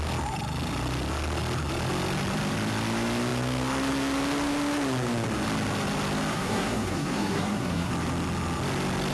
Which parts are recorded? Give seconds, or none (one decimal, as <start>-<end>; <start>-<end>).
0.0-6.3; 7.9-9.1